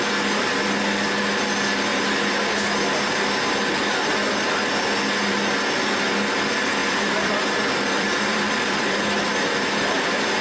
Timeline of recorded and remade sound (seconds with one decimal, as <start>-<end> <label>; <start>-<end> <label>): 0.0-6.8 recorded; 6.8-10.4 remade